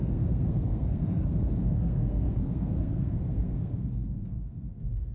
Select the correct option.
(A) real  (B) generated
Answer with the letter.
B